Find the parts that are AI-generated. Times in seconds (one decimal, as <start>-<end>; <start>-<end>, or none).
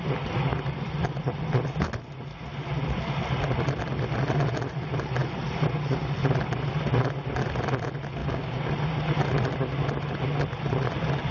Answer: 8.2-8.7